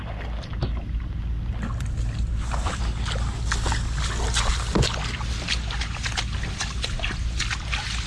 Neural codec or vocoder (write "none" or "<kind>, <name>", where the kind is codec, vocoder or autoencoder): none